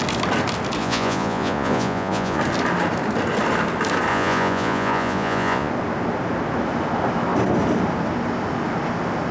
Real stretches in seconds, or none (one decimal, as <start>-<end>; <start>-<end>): 0.0-0.8; 2.4-4.1; 5.7-9.3